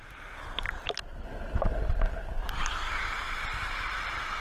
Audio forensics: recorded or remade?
recorded